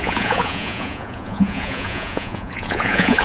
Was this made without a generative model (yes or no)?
no